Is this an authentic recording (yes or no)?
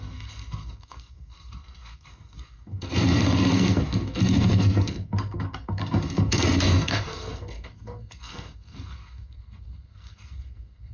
no